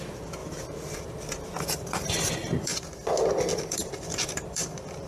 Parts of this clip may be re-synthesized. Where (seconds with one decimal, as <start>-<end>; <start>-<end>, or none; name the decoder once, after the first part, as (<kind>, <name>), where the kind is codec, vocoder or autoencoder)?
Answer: 0.0-2.7 (vocoder, BigVGAN v2); 3.5-5.1